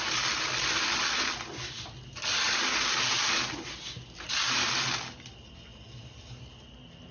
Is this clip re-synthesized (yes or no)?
no